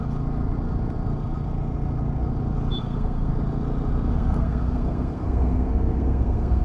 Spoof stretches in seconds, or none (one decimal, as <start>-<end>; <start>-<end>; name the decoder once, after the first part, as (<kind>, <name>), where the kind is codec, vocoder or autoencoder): 2.8-3.3 (codec, SNAC); 4.1-6.6